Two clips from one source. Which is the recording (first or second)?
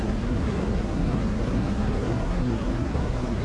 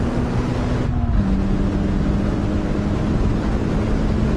second